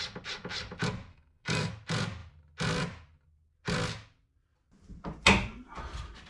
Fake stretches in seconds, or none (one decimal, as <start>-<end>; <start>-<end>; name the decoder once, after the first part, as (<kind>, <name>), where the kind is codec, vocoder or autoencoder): 1.1-1.7 (codec, SNAC)